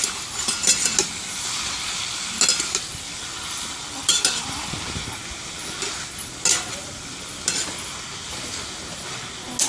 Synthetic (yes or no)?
no